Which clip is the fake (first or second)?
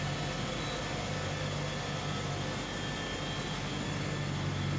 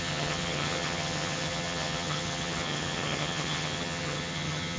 second